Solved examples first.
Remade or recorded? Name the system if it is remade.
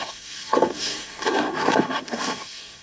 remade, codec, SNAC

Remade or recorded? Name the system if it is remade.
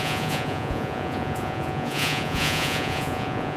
remade, vocoder, Vocos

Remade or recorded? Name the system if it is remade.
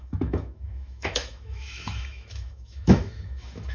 remade, autoencoder, DAC-VAE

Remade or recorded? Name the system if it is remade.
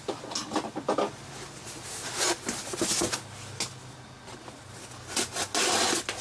recorded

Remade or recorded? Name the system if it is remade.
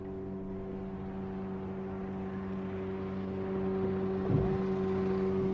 recorded